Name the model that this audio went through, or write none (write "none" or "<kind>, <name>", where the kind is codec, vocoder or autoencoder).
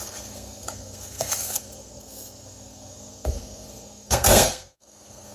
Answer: codec, SNAC